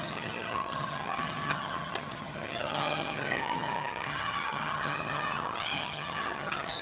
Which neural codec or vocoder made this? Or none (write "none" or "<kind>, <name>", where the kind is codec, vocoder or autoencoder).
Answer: vocoder, HiFi-GAN